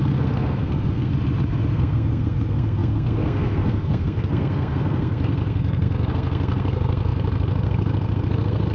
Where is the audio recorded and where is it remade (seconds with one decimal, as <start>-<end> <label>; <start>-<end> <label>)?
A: 0.0-1.1 remade; 1.1-1.7 recorded; 1.7-8.7 remade